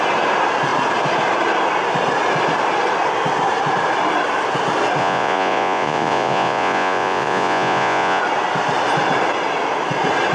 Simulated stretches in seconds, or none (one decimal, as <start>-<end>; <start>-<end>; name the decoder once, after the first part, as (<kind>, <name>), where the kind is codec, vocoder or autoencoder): 5.0-8.2 (vocoder, Vocos)